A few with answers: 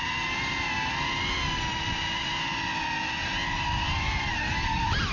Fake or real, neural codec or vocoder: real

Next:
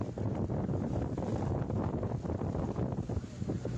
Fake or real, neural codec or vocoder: real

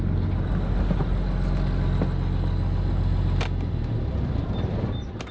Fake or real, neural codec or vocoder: real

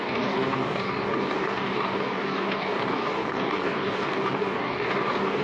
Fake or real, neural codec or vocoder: fake, codec, DAC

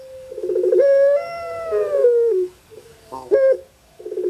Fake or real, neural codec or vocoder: fake, codec, DAC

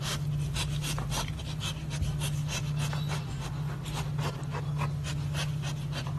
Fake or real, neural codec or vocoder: real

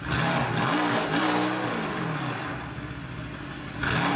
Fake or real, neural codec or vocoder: real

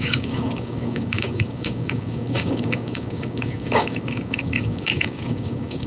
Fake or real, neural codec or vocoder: fake, codec, DAC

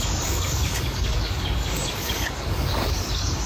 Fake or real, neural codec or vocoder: fake, codec, DAC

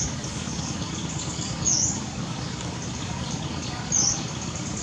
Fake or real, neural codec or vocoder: fake, codec, DAC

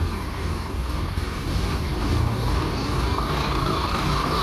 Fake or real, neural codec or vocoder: fake, codec, DAC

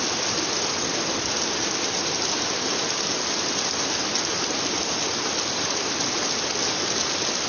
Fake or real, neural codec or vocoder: real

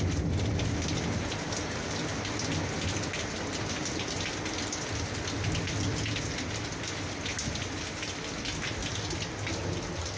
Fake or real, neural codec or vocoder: real